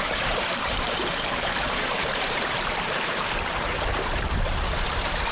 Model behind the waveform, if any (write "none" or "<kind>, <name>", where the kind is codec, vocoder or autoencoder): vocoder, BigVGAN v2